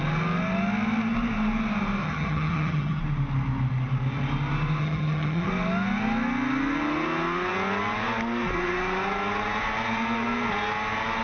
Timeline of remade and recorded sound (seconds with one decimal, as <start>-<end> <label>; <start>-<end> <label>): 0.0-2.0 recorded; 2.0-3.0 remade; 3.0-4.8 recorded; 4.8-5.5 remade; 5.5-11.2 recorded